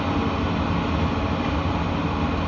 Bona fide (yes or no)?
yes